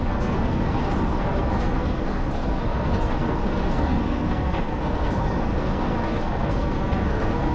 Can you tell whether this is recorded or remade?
remade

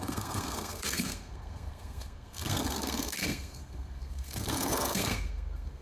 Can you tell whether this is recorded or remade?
remade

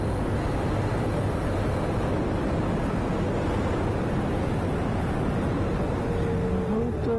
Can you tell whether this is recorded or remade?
recorded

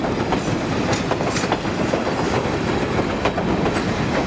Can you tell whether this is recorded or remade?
recorded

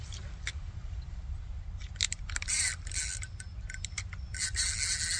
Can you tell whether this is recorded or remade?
recorded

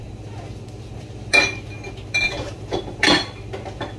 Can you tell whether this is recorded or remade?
recorded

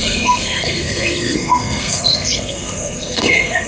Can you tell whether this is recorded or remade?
remade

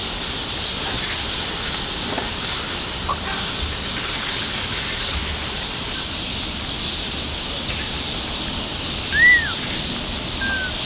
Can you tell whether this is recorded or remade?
recorded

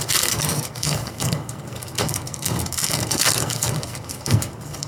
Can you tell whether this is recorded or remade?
remade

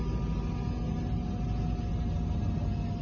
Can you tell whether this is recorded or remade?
recorded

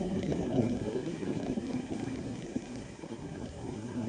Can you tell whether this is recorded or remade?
remade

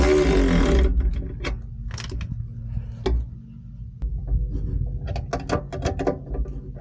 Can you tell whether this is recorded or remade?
recorded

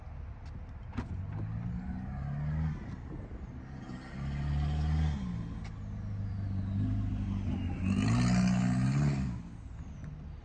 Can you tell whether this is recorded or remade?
recorded